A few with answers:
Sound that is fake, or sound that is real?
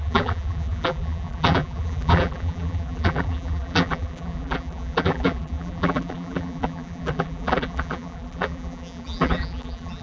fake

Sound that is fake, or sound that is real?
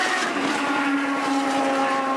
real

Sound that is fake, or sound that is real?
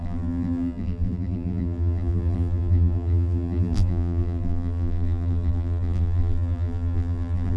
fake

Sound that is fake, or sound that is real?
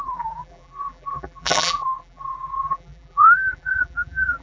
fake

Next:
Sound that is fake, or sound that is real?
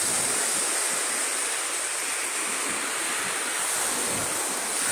real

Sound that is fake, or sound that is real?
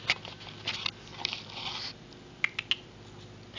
real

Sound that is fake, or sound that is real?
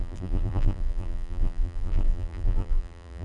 fake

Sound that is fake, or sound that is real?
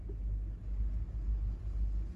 real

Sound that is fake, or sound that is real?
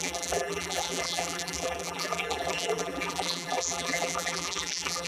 fake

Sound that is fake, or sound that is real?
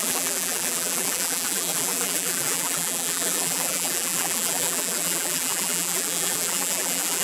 fake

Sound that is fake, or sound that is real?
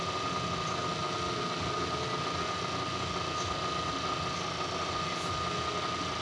real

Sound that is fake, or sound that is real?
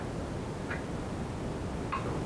real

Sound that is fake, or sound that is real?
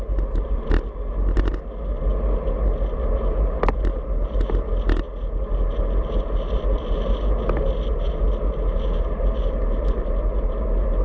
real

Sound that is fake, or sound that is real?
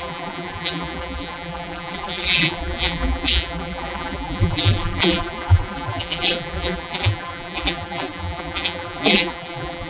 fake